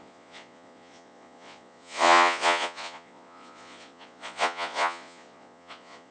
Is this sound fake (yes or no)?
yes